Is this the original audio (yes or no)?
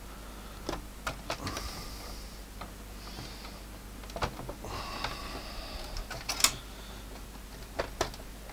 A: yes